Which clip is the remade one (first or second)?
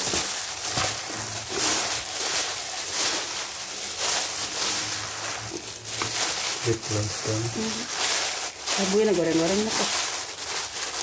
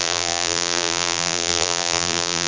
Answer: second